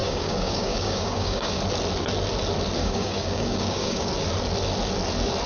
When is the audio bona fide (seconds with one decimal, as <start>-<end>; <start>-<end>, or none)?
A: 1.6-2.8; 4.1-5.5

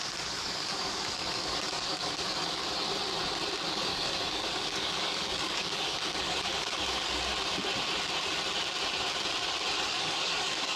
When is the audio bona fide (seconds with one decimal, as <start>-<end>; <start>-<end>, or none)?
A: 2.6-3.7; 7.3-9.8

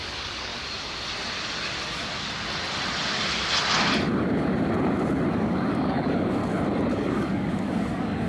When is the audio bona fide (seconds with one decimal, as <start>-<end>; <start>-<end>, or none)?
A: 0.5-5.3; 6.4-6.9

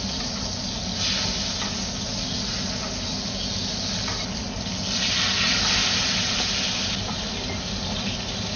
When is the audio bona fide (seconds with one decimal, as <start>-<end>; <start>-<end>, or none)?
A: 0.0-8.6

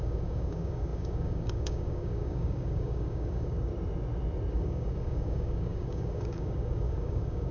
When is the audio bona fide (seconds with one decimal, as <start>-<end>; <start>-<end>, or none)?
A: 3.7-4.5